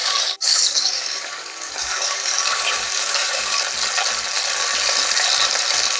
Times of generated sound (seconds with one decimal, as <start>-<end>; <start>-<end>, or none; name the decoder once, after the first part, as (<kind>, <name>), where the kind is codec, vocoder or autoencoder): 0.0-3.6 (codec, DAC)